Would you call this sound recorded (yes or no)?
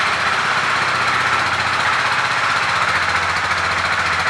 yes